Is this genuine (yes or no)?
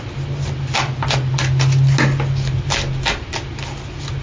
yes